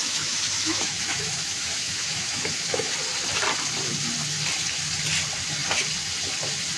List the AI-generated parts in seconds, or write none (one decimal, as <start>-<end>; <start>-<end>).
0.0-2.9